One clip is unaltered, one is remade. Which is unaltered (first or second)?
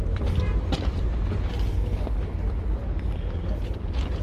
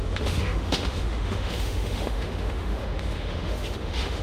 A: first